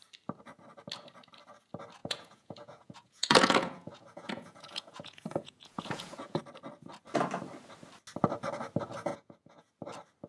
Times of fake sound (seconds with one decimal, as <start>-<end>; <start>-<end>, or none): 2.0-6.4; 9.1-9.7